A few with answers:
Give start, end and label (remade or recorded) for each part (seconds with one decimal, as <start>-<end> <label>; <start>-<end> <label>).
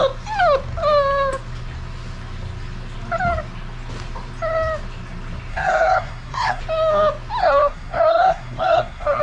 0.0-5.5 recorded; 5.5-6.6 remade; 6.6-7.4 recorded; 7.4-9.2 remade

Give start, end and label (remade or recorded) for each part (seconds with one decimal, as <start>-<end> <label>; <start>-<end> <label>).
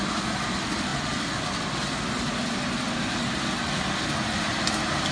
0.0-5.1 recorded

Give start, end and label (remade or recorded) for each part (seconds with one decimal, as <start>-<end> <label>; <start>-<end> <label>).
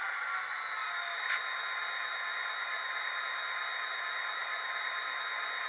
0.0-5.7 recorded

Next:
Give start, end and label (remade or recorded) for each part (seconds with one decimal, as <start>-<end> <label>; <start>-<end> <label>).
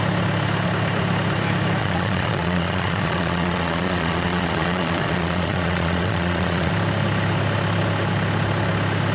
0.0-1.8 recorded; 1.8-6.7 remade; 6.7-9.1 recorded